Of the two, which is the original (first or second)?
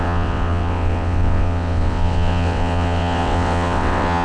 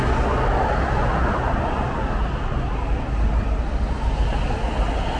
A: second